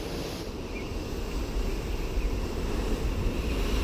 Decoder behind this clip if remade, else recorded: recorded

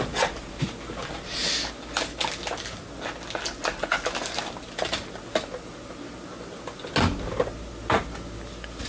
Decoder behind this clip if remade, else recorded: recorded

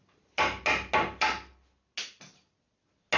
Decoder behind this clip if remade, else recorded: recorded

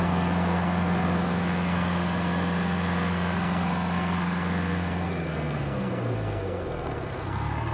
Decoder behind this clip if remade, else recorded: remade, codec, SNAC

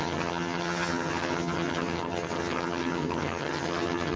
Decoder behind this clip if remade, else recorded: remade, vocoder, HiFi-GAN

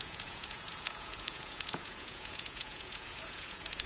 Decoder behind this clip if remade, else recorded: remade, vocoder, Vocos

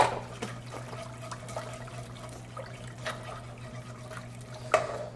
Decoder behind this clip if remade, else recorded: recorded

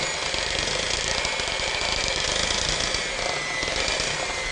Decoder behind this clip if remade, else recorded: recorded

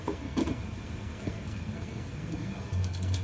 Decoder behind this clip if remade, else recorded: remade, codec, SNAC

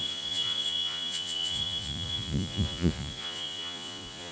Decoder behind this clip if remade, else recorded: remade, vocoder, Vocos